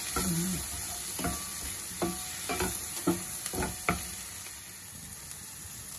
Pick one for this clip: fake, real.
real